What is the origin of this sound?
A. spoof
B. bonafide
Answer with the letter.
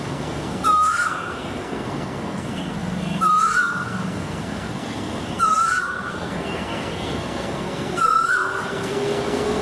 A